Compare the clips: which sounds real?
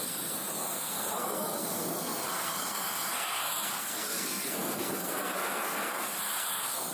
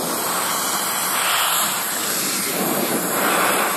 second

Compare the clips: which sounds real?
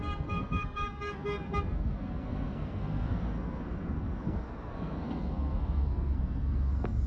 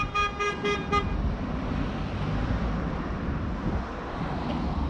second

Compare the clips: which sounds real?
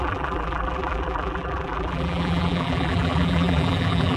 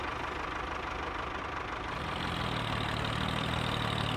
second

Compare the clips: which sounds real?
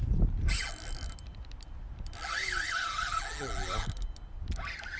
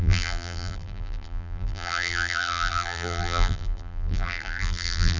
first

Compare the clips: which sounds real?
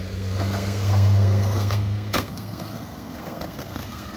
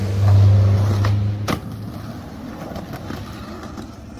second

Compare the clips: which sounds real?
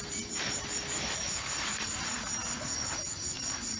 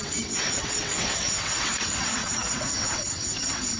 first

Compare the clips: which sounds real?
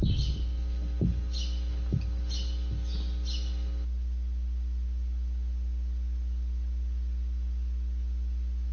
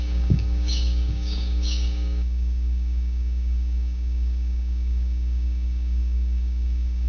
first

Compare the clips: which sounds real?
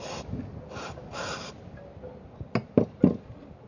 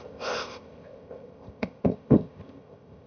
first